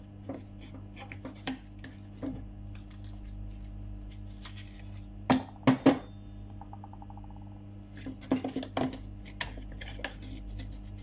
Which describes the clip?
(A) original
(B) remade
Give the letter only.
A